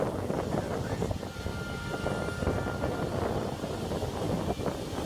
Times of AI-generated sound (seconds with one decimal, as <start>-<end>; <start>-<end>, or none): none